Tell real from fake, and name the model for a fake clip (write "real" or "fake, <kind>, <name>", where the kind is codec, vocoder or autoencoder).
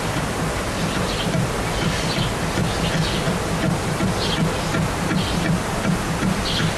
real